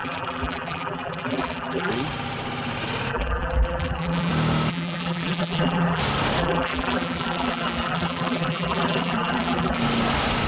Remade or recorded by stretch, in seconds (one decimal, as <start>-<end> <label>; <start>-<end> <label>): 0.0-1.9 remade; 1.9-3.1 recorded; 3.1-4.3 remade; 4.3-4.7 recorded; 4.7-6.0 remade; 6.0-6.4 recorded; 6.4-9.8 remade; 9.8-10.5 recorded